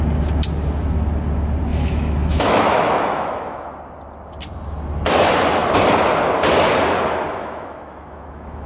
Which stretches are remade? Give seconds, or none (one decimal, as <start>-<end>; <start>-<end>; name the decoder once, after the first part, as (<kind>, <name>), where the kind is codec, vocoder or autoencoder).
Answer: 1.7-3.8 (autoencoder, DAC-VAE); 7.4-8.7